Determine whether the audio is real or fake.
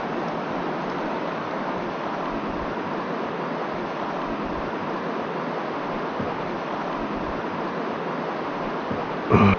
real